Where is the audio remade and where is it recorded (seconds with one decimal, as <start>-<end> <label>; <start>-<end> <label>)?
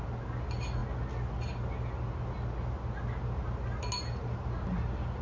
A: 0.0-5.2 recorded